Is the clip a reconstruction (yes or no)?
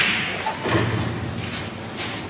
no